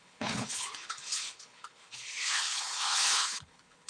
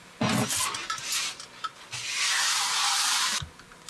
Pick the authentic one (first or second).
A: second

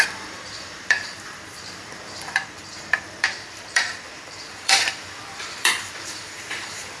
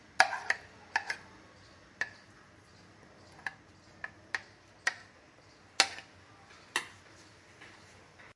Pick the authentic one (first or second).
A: second